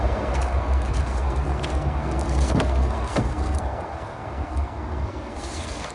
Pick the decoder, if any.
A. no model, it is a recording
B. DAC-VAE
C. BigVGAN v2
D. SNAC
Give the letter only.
D